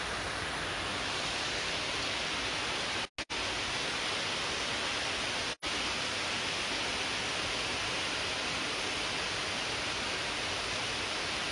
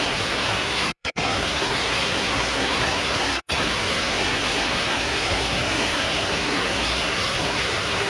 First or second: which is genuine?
first